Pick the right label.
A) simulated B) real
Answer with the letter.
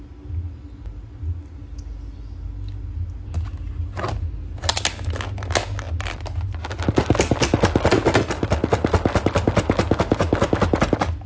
B